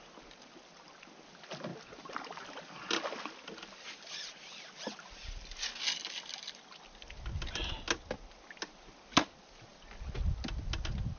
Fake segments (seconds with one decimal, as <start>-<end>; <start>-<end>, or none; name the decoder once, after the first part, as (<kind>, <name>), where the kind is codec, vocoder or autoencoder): none